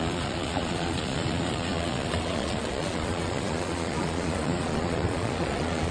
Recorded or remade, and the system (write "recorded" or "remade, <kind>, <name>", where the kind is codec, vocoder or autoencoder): remade, vocoder, Vocos